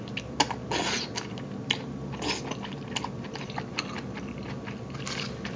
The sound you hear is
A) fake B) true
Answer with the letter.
B